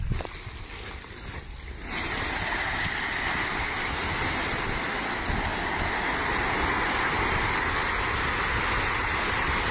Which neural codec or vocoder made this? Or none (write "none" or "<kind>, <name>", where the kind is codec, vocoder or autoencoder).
none